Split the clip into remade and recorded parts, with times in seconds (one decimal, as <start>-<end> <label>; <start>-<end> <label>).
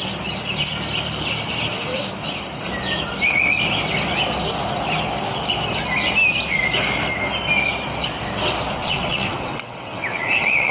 0.0-8.8 recorded; 8.8-10.7 remade